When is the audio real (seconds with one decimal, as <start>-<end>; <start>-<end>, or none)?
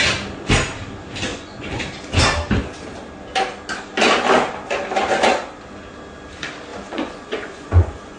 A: 0.0-1.3; 1.8-6.7